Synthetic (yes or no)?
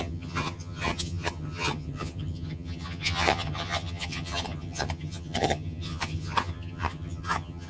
yes